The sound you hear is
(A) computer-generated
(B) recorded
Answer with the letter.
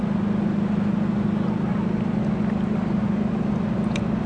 B